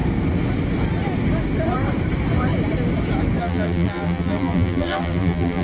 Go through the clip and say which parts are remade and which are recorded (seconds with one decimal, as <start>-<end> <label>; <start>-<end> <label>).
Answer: 0.0-3.4 recorded; 3.4-5.6 remade

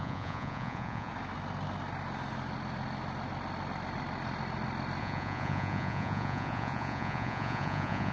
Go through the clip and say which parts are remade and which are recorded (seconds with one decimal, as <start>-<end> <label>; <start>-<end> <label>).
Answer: 0.0-1.1 remade; 1.1-5.0 recorded; 5.0-8.1 remade

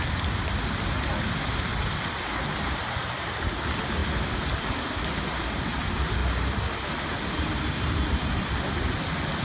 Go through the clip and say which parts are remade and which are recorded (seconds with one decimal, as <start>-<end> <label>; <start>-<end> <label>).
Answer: 0.0-1.7 remade; 1.7-2.7 recorded; 2.7-6.2 remade; 6.2-7.0 recorded; 7.0-9.4 remade

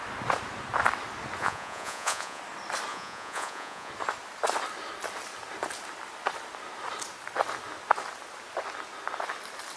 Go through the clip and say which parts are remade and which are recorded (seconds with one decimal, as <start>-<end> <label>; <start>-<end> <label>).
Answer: 0.0-1.4 recorded; 1.4-2.4 remade; 2.4-2.9 recorded; 2.9-3.9 remade; 3.9-9.8 recorded

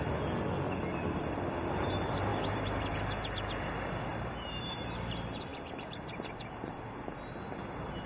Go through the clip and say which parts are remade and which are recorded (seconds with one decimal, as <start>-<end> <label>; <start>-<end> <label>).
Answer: 0.0-2.3 recorded; 2.3-2.9 remade; 2.9-4.1 recorded; 4.1-4.8 remade; 4.8-8.1 recorded